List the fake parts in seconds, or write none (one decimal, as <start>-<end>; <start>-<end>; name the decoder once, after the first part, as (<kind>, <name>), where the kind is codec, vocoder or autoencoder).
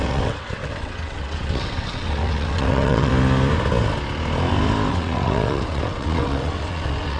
0.0-3.1 (vocoder, WaveNeXt); 4.9-7.2